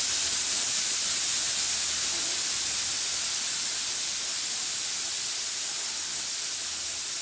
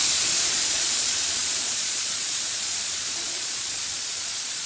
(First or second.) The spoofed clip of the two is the second